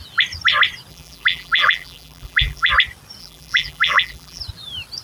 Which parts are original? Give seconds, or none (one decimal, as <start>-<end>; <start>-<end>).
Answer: 0.0-0.9; 2.7-3.2; 4.4-5.0